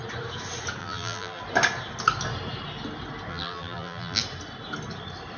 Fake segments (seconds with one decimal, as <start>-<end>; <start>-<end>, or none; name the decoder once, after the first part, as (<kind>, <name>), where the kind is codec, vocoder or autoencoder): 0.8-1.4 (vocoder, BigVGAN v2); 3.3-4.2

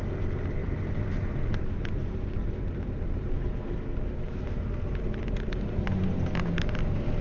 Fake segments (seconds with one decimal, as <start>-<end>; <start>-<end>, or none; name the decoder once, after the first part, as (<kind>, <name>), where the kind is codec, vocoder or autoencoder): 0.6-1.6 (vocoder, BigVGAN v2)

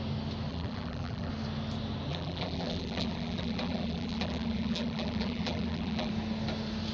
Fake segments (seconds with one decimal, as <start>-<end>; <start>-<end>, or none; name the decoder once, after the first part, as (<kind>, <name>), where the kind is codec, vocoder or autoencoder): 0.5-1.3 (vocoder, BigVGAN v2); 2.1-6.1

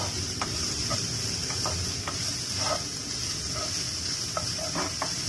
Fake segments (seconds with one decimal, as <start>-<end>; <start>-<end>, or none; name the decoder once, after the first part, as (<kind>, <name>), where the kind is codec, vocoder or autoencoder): 0.0-1.4 (vocoder, BigVGAN v2); 4.6-5.3

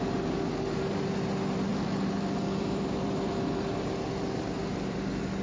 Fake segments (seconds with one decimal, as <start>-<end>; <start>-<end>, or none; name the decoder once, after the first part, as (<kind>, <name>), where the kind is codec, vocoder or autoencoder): 1.7-3.7 (vocoder, BigVGAN v2)

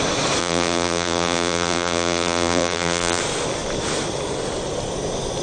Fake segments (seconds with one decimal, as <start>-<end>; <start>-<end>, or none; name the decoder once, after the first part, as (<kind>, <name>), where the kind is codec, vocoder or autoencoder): 0.4-3.2 (vocoder, BigVGAN v2)

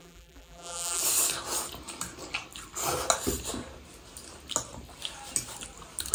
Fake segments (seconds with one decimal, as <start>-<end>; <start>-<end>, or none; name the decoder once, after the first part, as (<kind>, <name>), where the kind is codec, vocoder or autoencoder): 0.0-1.0 (vocoder, BigVGAN v2)